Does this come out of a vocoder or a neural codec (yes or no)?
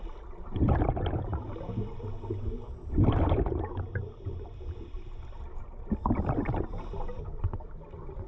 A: no